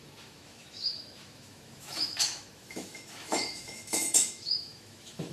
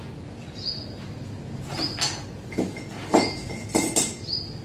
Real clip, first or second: second